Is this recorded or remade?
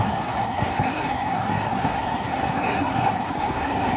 remade